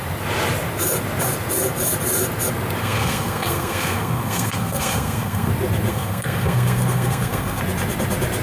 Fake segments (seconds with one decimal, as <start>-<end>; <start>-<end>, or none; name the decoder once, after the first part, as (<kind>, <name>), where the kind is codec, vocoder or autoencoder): 2.8-5.5 (codec, SNAC); 5.9-7.6